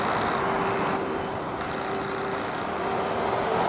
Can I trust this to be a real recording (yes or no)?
yes